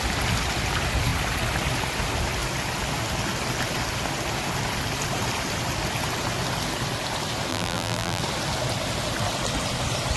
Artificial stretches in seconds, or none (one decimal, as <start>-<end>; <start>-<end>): 7.5-8.2